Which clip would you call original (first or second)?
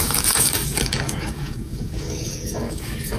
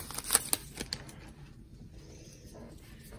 second